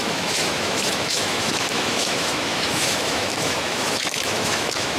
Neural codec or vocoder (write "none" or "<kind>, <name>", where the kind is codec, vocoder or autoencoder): autoencoder, DAC-VAE